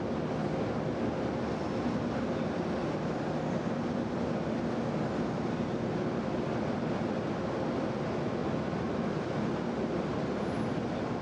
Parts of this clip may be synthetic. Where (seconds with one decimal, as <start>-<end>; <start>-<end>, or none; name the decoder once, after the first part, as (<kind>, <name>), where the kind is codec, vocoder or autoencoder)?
8.4-9.3 (vocoder, BigVGAN v2)